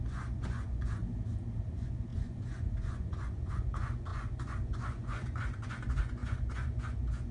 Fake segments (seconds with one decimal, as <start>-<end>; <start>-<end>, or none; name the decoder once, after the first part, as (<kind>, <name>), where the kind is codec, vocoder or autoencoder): 0.0-1.0 (vocoder, Vocos); 1.7-7.3